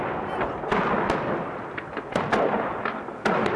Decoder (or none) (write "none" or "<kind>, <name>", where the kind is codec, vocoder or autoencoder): none